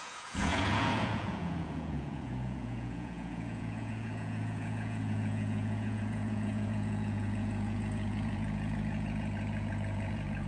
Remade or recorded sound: remade